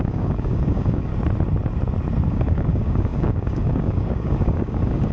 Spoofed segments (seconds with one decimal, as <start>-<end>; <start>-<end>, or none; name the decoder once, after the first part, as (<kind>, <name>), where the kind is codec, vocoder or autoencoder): 0.0-1.1 (codec, DAC); 2.3-5.1